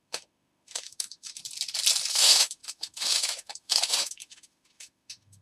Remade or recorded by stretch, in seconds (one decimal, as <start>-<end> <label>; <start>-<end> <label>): 0.0-1.4 remade; 1.4-2.1 recorded; 2.1-5.4 remade